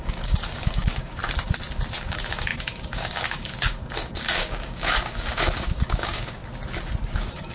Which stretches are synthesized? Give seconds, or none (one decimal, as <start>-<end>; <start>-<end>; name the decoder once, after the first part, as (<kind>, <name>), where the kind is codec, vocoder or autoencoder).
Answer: 0.0-1.2 (codec, DAC); 2.0-6.4; 7.0-7.5